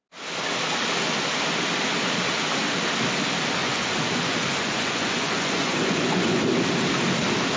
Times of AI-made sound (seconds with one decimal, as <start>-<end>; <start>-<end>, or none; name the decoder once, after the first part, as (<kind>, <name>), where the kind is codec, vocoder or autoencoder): 3.6-6.4 (vocoder, Vocos)